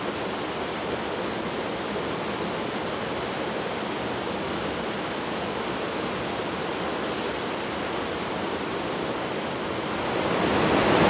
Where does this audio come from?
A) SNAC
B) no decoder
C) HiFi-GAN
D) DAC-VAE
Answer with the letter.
B